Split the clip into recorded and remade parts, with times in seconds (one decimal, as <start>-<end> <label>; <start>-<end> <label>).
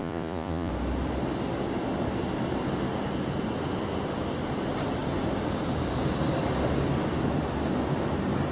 0.0-0.7 remade; 0.7-8.5 recorded